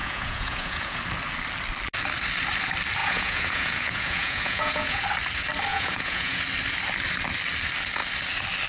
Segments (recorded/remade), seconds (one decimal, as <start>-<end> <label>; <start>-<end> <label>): 0.0-1.0 remade; 1.0-3.0 recorded; 3.0-5.0 remade; 5.0-5.7 recorded; 5.7-6.4 remade; 6.4-8.7 recorded